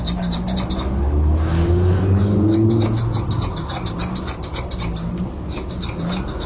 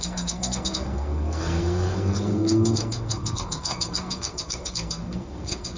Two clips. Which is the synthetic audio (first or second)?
second